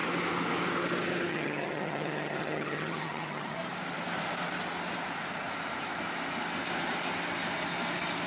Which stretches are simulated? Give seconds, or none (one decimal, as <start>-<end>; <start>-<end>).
1.3-3.6